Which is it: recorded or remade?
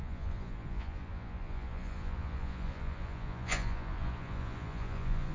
remade